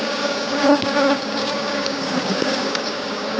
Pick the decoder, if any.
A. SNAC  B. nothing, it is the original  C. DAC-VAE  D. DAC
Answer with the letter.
D